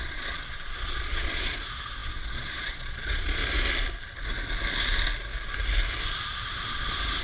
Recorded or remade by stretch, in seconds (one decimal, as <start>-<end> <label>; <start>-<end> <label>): 0.0-3.4 remade; 3.4-6.7 recorded; 6.7-7.2 remade